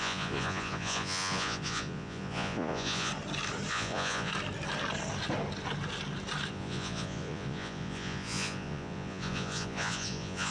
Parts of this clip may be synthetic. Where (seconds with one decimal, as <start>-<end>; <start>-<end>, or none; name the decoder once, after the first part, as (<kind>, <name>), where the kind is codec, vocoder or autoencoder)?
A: 0.0-3.1 (vocoder, Vocos); 3.7-4.3; 6.5-10.5